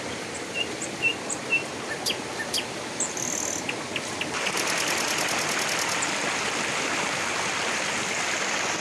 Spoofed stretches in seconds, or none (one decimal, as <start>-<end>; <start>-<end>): none